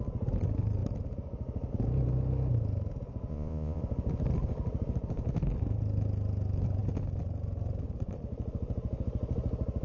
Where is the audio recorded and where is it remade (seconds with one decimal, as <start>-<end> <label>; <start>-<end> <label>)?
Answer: 0.0-3.3 recorded; 3.3-3.8 remade; 3.8-9.8 recorded